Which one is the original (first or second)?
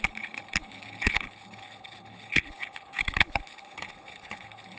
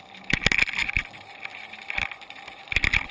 second